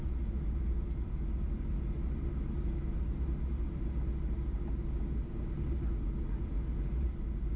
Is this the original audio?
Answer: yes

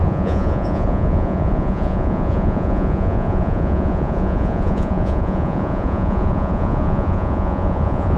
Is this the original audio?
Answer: no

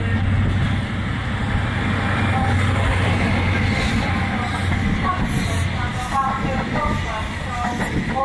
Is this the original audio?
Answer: yes